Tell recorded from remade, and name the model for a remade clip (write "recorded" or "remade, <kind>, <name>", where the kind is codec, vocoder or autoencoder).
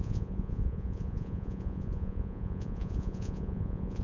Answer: remade, vocoder, Vocos